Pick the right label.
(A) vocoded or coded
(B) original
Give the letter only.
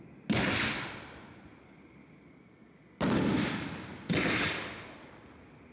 B